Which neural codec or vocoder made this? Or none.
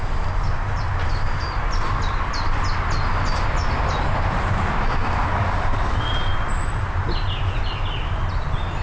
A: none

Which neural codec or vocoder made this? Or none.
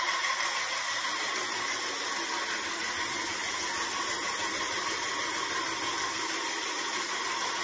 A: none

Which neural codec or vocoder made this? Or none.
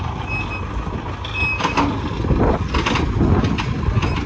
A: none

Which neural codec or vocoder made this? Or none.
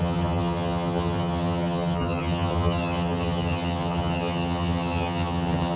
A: vocoder, HiFi-GAN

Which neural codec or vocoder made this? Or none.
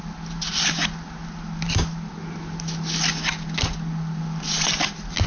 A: none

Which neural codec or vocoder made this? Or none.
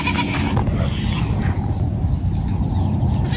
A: none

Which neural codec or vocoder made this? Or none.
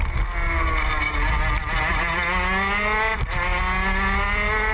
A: none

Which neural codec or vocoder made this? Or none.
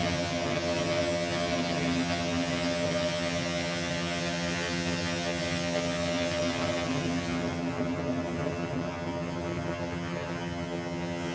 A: vocoder, HiFi-GAN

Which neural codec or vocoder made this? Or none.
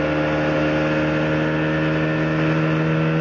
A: none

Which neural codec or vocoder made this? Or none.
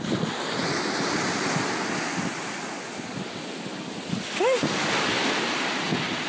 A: none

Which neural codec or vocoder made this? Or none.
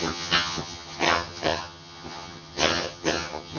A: vocoder, HiFi-GAN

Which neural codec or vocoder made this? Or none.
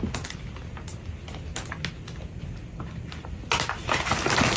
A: none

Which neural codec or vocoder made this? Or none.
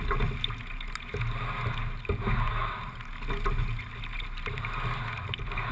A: none